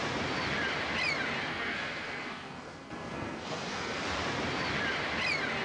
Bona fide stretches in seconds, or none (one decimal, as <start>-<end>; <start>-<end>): 0.0-1.5; 4.0-5.6